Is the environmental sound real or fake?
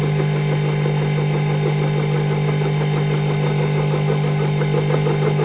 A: real